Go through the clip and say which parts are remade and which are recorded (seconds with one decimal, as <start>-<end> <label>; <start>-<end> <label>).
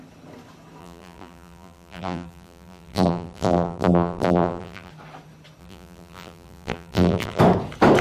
0.0-0.8 recorded; 0.8-4.9 remade; 4.9-5.6 recorded; 5.6-7.4 remade; 7.4-8.0 recorded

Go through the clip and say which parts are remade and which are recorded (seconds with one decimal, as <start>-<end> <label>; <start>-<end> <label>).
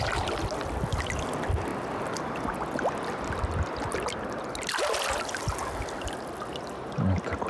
0.0-7.5 recorded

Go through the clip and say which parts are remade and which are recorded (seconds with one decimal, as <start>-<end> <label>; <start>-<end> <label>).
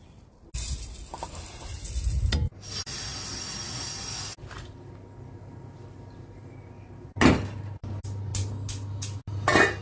0.0-9.8 recorded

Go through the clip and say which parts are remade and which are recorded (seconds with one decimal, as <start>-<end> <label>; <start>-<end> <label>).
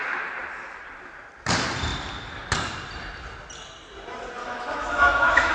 0.0-4.4 recorded; 4.4-5.5 remade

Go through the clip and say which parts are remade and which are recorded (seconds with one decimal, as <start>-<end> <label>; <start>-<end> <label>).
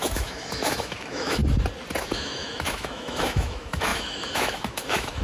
0.0-1.4 remade; 1.4-2.0 recorded; 2.0-5.2 remade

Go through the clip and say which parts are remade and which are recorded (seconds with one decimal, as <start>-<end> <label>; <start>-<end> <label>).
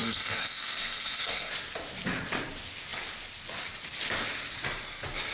0.0-1.5 remade; 1.5-5.3 recorded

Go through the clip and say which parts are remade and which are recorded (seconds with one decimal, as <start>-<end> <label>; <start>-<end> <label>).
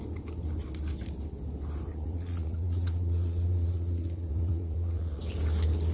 0.0-1.9 recorded; 1.9-5.2 remade; 5.2-5.9 recorded